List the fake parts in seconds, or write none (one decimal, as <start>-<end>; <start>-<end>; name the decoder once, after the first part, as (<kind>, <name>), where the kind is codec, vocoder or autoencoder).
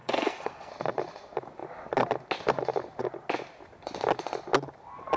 0.0-0.7 (codec, SNAC)